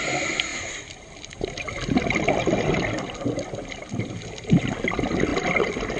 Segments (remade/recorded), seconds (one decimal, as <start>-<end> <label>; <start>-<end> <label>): 0.0-0.5 recorded; 0.5-4.1 remade; 4.1-6.0 recorded